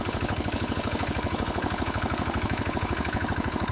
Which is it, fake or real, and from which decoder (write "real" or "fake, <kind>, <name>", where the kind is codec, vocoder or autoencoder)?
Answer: fake, codec, HILCodec